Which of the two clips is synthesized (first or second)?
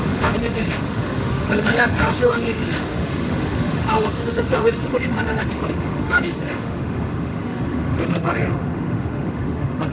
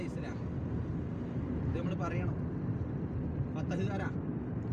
first